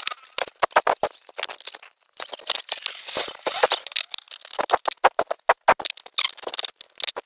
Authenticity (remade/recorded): recorded